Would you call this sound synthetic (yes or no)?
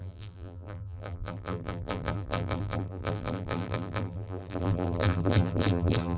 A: yes